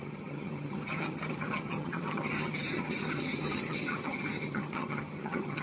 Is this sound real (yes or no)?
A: no